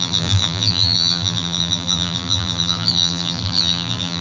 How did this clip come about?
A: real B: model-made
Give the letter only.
B